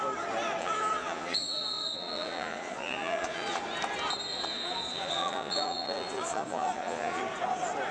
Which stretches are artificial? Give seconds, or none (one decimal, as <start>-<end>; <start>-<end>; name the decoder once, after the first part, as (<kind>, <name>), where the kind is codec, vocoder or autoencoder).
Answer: 0.6-3.6 (vocoder, Vocos); 4.3-7.2